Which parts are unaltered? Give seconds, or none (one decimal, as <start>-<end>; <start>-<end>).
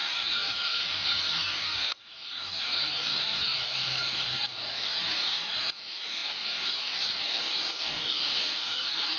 none